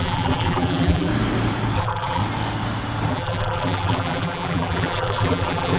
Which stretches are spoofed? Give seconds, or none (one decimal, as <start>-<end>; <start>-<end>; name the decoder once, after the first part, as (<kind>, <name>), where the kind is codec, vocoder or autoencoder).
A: 0.0-1.1 (vocoder, BigVGAN v2); 1.8-2.2; 3.1-5.8